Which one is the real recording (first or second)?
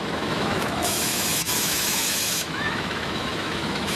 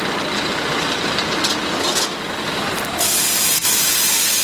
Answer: second